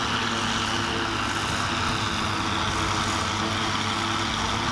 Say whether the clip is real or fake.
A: real